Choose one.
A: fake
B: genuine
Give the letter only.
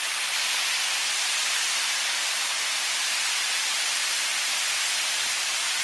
A